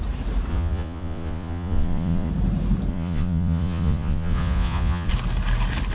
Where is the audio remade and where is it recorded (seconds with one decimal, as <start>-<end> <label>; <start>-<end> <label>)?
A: 0.0-0.5 recorded; 0.5-2.3 remade; 2.3-2.9 recorded; 2.9-5.1 remade; 5.1-5.9 recorded